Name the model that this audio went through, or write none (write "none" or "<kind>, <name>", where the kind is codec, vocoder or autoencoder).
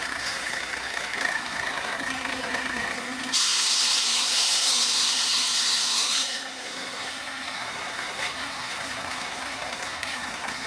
codec, SNAC